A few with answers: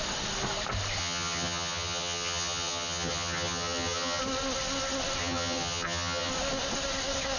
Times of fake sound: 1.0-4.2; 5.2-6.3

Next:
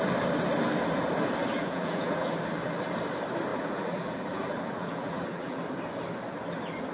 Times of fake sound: 1.4-2.4; 3.5-5.6

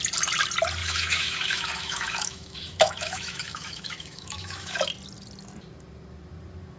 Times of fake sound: 0.8-4.9

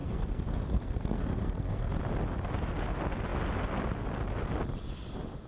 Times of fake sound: 0.0-1.9

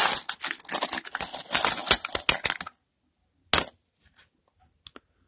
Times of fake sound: none

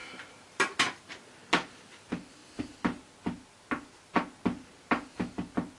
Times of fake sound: none

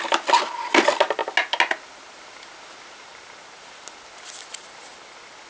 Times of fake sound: none